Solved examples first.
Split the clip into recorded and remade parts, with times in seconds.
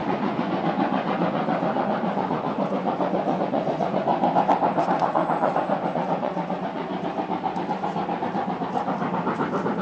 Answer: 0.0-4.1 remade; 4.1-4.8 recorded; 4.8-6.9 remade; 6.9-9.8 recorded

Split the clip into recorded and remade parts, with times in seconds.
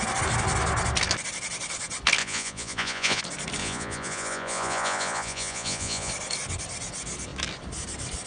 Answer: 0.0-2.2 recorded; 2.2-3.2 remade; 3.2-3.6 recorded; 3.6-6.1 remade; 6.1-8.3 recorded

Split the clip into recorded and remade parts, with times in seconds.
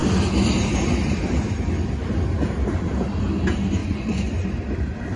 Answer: 0.0-3.8 recorded; 3.8-4.3 remade; 4.3-5.2 recorded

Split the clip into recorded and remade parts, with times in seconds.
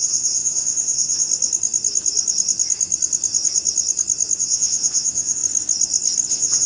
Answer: 0.0-1.3 remade; 1.3-4.4 recorded; 4.4-5.4 remade; 5.4-6.3 recorded; 6.3-6.7 remade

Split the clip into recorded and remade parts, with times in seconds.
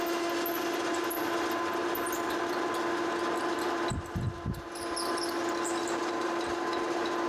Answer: 0.0-7.3 recorded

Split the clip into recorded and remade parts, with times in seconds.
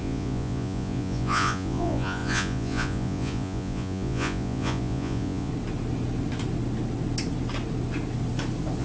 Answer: 0.0-5.5 remade; 5.5-8.8 recorded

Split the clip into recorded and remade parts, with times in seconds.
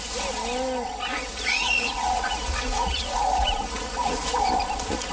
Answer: 0.0-1.1 recorded; 1.1-4.2 remade; 4.2-5.1 recorded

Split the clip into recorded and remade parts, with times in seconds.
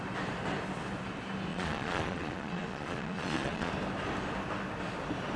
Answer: 0.0-1.5 recorded; 1.5-3.7 remade; 3.7-5.4 recorded